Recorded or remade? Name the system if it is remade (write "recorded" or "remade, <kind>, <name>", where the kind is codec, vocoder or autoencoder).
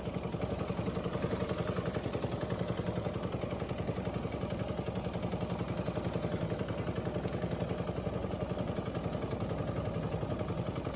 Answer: recorded